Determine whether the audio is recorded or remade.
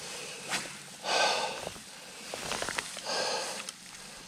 remade